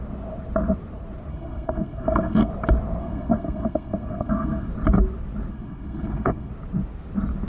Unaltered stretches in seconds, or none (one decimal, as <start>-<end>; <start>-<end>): 0.0-1.3; 2.5-3.0; 4.7-5.5; 6.5-7.5